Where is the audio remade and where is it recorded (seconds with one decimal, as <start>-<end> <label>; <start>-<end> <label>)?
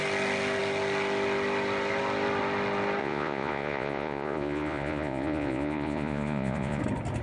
0.0-3.0 recorded; 3.0-6.8 remade; 6.8-7.2 recorded